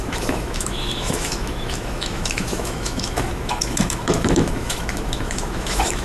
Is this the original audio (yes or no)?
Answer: no